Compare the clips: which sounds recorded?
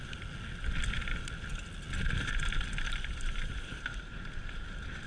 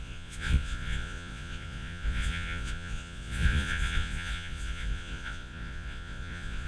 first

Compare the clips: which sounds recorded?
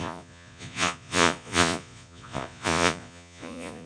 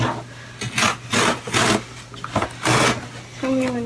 second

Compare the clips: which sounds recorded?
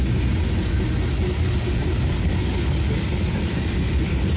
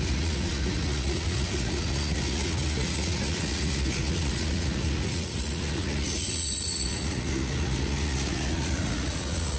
first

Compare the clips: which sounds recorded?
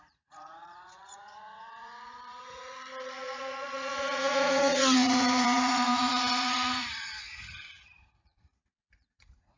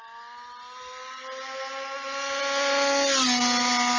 second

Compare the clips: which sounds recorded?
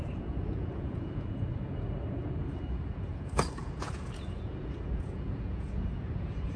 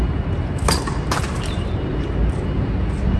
second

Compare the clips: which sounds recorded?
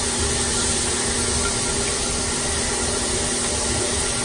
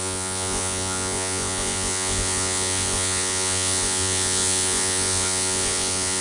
first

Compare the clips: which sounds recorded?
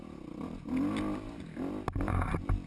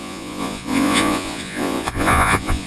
first